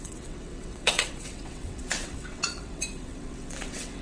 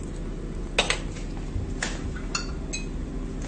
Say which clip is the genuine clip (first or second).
second